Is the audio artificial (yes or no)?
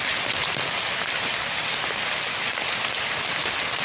no